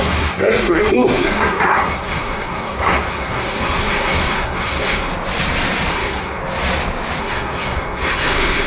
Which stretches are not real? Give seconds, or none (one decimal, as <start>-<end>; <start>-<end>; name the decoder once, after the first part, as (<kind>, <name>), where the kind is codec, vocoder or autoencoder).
0.0-5.1 (codec, SNAC); 5.9-6.4; 7.2-8.7